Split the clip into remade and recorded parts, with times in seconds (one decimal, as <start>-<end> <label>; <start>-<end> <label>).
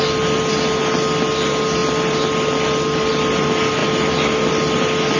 0.0-5.2 recorded